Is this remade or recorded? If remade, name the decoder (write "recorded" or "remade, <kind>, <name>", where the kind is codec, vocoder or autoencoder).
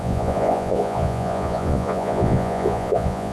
remade, vocoder, Vocos